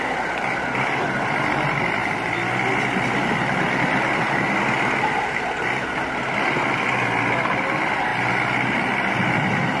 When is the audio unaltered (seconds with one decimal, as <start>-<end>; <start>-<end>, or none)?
0.0-9.8